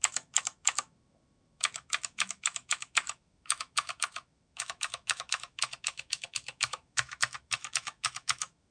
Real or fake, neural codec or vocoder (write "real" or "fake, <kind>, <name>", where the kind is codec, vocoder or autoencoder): fake, autoencoder, DAC-VAE